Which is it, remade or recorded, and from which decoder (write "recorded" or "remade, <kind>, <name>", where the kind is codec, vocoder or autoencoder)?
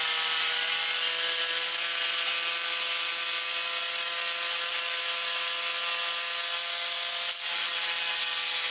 recorded